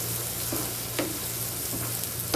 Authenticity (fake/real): real